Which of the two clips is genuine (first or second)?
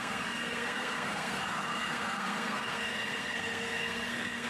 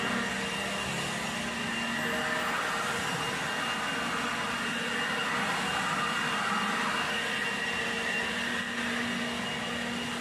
second